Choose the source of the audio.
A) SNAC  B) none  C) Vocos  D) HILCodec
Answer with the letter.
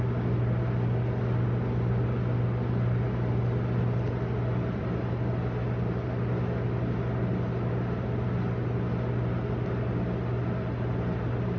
B